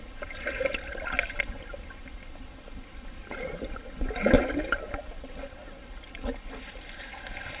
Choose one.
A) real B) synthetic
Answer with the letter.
A